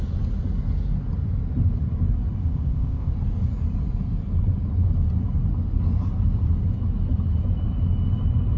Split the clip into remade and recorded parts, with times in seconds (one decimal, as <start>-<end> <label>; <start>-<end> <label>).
0.0-2.4 recorded; 2.4-3.1 remade; 3.1-8.6 recorded